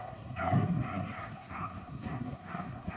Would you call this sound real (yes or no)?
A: no